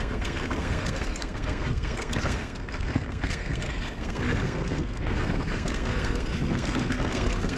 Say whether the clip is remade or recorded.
remade